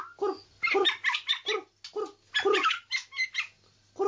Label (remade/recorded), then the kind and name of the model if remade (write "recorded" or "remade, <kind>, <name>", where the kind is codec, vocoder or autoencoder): recorded